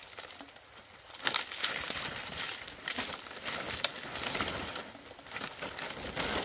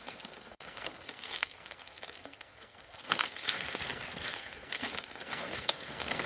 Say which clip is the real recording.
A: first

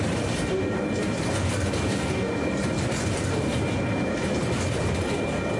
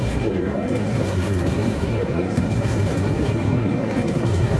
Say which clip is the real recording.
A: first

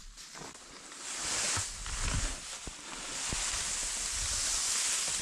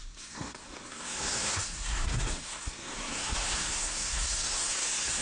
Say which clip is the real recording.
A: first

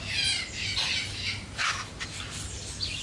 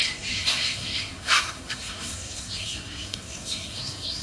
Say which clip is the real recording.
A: first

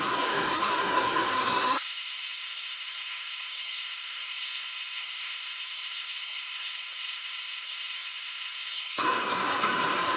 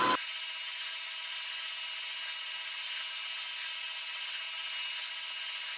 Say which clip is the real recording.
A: second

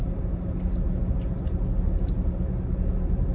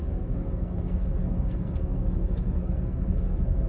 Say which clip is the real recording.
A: first